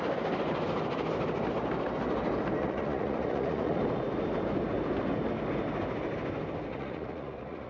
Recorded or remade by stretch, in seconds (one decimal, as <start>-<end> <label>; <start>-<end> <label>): 0.0-2.6 recorded; 2.6-3.8 remade; 3.8-6.7 recorded; 6.7-7.7 remade